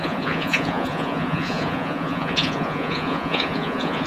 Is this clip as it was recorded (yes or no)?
no